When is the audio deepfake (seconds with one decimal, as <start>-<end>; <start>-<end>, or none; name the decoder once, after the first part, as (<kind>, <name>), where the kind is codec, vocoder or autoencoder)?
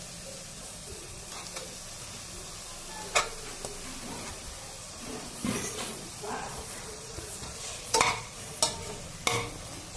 0.5-1.3 (vocoder, Vocos); 4.8-8.6